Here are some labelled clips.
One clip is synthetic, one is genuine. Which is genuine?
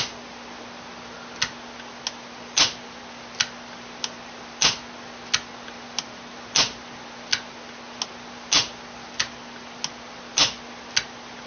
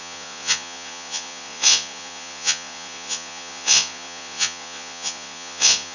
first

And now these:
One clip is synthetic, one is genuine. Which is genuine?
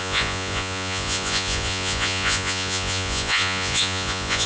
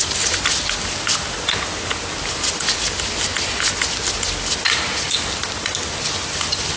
second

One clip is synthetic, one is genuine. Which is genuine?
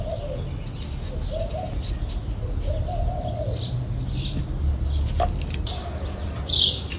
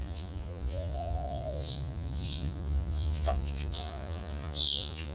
first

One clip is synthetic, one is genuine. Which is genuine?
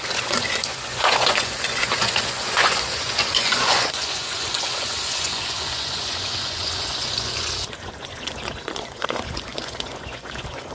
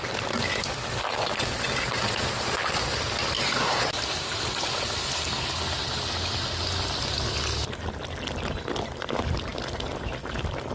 second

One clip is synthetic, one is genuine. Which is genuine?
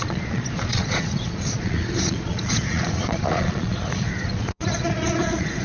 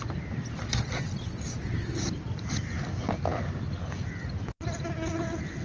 second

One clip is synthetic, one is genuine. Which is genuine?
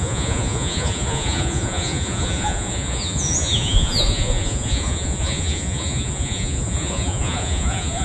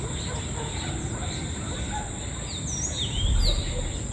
second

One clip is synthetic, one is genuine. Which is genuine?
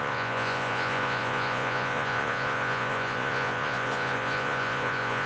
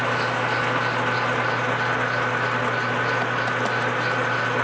second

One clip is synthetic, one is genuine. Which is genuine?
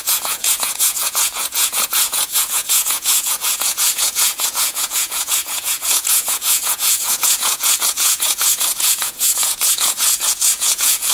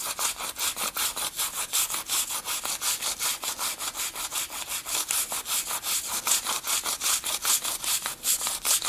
second